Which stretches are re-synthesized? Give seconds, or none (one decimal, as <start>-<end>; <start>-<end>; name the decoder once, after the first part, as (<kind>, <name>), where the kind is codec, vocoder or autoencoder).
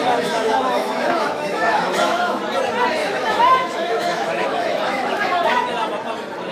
0.0-2.4 (autoencoder, DAC-VAE); 3.0-5.7